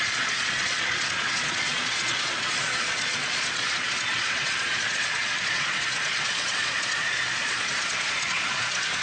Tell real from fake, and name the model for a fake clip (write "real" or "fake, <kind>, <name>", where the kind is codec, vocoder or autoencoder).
fake, vocoder, Vocos